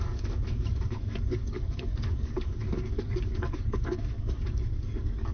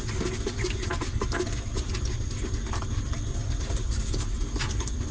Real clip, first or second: second